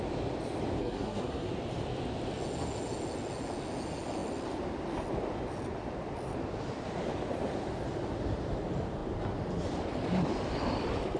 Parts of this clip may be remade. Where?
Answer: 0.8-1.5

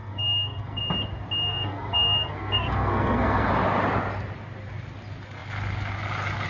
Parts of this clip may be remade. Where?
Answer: 0.0-0.8; 1.4-3.5